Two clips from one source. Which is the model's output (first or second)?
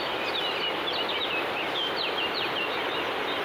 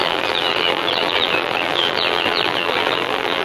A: second